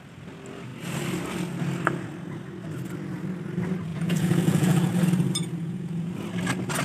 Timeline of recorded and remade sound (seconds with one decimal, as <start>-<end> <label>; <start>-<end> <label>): 0.0-3.9 recorded; 3.9-4.9 remade; 4.9-5.4 recorded; 5.4-6.1 remade; 6.1-6.8 recorded